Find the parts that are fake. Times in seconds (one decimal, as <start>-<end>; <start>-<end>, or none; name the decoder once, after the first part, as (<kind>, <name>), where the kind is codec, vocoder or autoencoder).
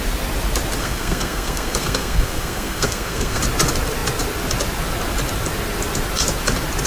0.8-3.4 (codec, SNAC)